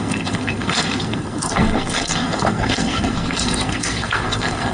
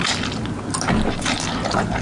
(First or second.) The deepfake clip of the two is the first